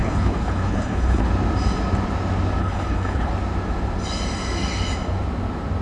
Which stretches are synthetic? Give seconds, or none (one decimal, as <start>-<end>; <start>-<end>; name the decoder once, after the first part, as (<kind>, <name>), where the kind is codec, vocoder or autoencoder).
0.0-1.3 (codec, HILCodec); 2.6-3.3